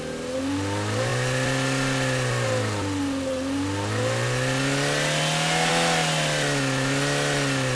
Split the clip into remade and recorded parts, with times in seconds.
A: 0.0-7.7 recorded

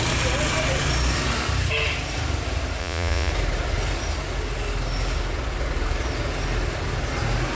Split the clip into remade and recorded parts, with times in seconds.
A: 0.0-2.8 recorded; 2.8-3.3 remade; 3.3-7.5 recorded

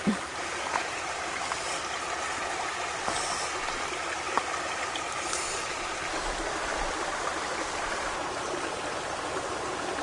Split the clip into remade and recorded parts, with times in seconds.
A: 0.0-0.8 recorded; 0.8-1.3 remade; 1.3-10.0 recorded

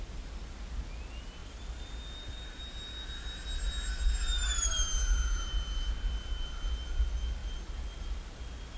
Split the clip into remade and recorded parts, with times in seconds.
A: 0.0-1.4 recorded; 1.4-2.6 remade; 2.6-8.8 recorded